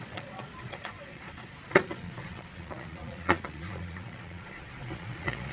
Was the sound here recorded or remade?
remade